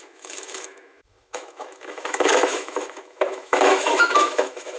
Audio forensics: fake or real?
fake